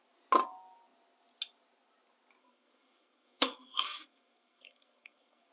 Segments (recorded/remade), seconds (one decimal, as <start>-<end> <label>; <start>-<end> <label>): 0.0-2.4 recorded; 2.4-5.5 remade